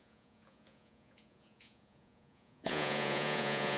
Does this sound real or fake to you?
fake